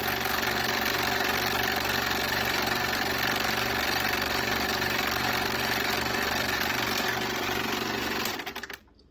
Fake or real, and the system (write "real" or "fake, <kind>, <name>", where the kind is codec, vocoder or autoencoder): real